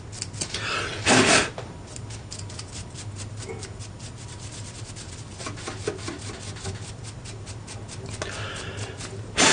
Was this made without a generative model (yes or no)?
yes